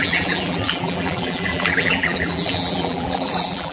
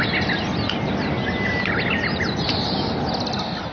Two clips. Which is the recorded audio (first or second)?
second